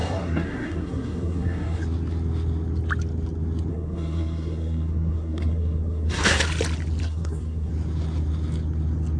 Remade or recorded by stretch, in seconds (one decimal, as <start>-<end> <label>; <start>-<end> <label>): 0.0-1.8 remade; 1.8-3.7 recorded; 3.7-6.4 remade; 6.4-7.0 recorded; 7.0-7.7 remade; 7.7-9.2 recorded